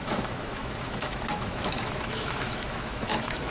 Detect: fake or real fake